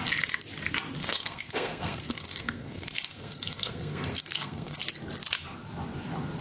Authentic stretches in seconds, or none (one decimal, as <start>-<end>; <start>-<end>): 0.0-1.0; 4.8-6.4